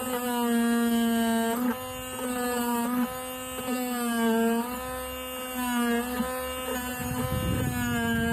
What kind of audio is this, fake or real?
real